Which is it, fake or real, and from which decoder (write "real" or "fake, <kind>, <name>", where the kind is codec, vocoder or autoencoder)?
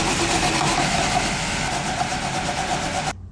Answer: real